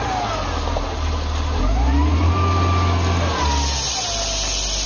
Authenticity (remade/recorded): recorded